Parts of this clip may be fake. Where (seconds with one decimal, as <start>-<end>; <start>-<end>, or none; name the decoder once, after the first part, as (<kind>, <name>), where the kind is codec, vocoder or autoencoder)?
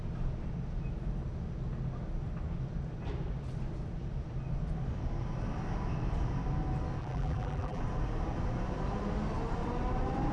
7.0-7.8 (vocoder, BigVGAN v2)